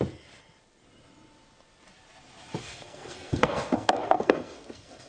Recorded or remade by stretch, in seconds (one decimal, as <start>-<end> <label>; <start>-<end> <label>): 0.0-2.6 recorded; 2.6-5.1 remade